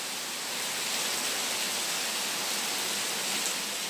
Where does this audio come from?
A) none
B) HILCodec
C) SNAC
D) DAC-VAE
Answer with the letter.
A